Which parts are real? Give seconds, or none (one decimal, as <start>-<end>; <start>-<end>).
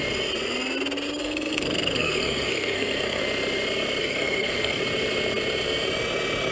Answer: 0.0-1.2; 3.2-4.0; 4.8-6.5